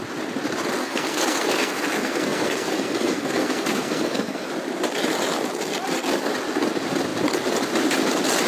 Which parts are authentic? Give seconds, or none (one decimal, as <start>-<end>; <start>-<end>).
0.0-0.8; 4.5-8.5